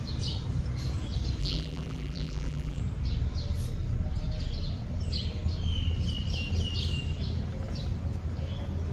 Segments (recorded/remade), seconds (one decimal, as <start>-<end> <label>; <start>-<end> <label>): 0.0-1.4 recorded; 1.4-2.8 remade; 2.8-8.9 recorded